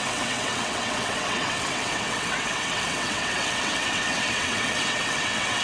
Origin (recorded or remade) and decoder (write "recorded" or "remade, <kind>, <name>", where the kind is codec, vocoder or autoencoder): remade, vocoder, WaveNeXt